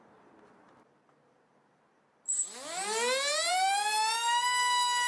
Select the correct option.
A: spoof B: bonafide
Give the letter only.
B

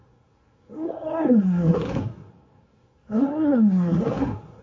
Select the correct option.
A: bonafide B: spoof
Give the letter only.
B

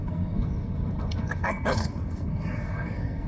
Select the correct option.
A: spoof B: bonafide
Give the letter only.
A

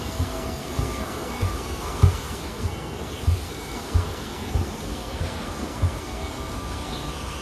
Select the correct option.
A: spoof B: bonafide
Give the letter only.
A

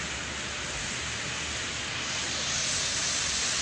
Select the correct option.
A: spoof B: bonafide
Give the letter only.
B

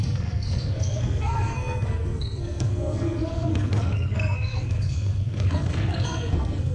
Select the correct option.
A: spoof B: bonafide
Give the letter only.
A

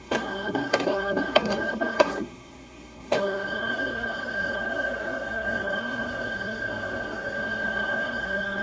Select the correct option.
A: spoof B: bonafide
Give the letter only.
A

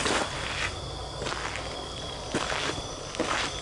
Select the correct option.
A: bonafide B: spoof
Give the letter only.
A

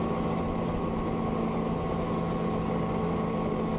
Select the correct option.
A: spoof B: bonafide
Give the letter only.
B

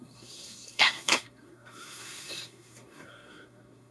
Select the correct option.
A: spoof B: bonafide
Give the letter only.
A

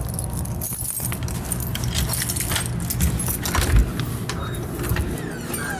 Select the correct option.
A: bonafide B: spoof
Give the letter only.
A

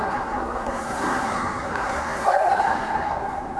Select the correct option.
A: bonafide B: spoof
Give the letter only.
B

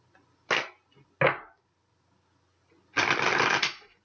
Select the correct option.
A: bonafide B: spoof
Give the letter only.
A